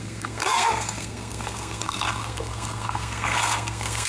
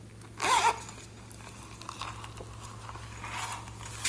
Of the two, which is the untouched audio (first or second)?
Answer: second